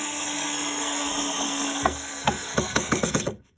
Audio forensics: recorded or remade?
remade